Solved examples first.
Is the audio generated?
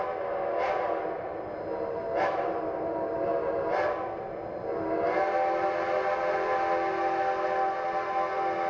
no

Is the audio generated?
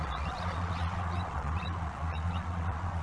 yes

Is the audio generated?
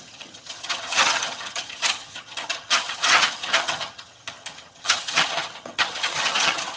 yes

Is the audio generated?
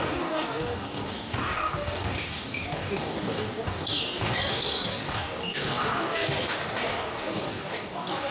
yes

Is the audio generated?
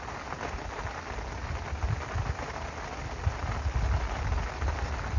no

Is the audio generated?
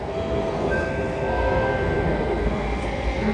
yes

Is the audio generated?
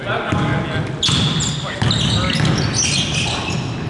no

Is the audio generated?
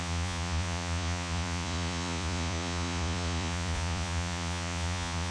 yes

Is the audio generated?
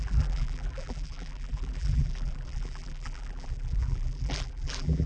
yes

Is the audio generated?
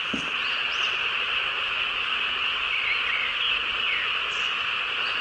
no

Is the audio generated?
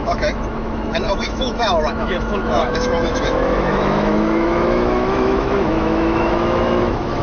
yes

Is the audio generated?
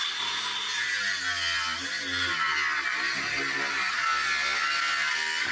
no